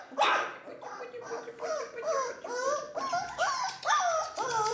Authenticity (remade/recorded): recorded